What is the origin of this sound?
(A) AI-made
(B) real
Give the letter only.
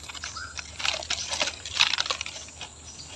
B